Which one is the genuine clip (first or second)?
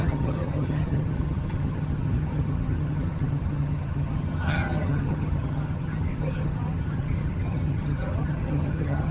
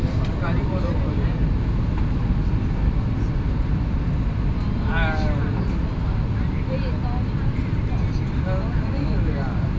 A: second